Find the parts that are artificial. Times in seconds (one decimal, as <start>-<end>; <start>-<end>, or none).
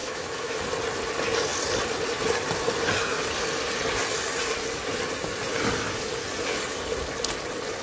0.0-0.6